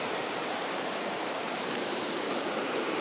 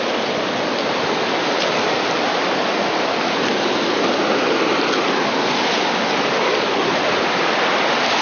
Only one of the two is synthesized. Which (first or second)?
first